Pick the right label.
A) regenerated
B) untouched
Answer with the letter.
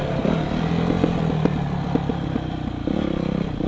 B